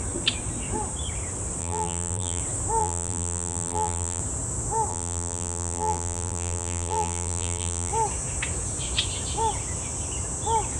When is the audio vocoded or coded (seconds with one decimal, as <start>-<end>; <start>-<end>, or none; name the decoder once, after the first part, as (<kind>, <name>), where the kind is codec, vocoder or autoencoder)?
1.6-2.4 (vocoder, BigVGAN v2); 2.8-4.2; 4.9-7.9